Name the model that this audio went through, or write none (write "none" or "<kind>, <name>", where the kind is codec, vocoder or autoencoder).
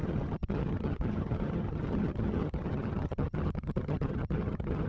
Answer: vocoder, HiFi-GAN